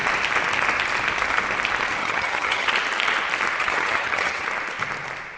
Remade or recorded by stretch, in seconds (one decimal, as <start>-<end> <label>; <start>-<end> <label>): 0.0-2.0 recorded; 2.0-2.7 remade; 2.7-3.6 recorded; 3.6-4.4 remade; 4.4-5.4 recorded